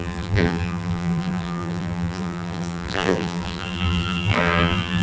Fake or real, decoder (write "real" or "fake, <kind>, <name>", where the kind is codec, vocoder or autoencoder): fake, vocoder, BigVGAN v2